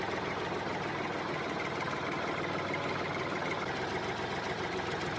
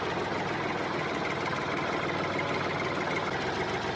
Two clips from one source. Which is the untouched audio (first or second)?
second